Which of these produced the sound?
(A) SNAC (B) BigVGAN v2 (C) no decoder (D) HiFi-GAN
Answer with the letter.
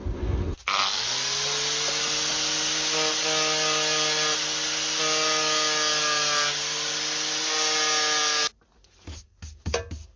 C